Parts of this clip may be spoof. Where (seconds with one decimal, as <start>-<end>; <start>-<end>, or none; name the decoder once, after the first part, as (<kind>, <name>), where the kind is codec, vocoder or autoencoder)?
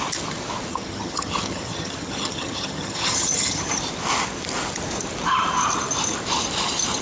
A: 0.7-3.8 (vocoder, HiFi-GAN)